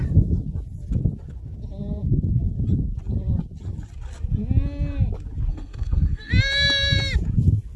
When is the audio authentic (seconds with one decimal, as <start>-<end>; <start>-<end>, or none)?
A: 0.0-5.5; 6.3-7.8